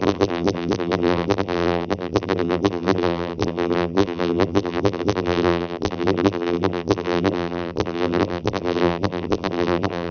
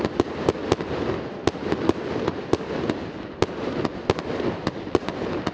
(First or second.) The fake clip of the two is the first